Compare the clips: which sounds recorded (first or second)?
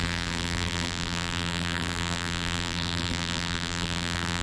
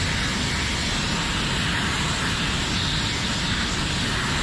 second